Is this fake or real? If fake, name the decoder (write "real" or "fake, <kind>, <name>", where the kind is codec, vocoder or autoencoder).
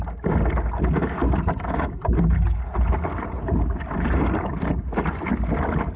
real